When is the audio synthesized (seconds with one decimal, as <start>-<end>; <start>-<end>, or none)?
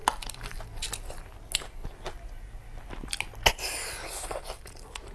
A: 0.0-0.6